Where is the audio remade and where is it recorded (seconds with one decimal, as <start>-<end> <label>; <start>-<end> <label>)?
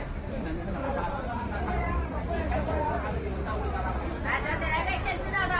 0.0-0.8 recorded; 0.8-4.2 remade; 4.2-5.6 recorded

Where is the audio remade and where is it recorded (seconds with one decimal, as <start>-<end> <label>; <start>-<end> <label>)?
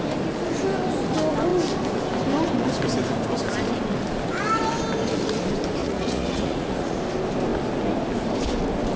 0.0-5.8 recorded; 5.8-7.0 remade; 7.0-9.0 recorded